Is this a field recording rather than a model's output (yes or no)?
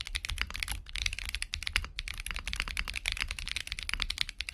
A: yes